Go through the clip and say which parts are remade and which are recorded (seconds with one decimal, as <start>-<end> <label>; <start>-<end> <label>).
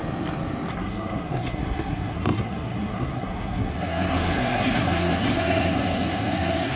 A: 0.0-0.7 recorded; 0.7-6.8 remade